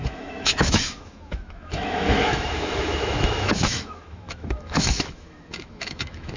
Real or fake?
fake